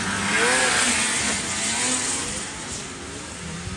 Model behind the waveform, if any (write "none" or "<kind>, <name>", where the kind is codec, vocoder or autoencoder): none